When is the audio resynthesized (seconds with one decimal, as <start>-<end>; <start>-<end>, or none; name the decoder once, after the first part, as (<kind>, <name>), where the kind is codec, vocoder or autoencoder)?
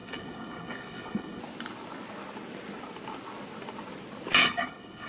0.0-1.4 (codec, HILCodec); 4.4-5.1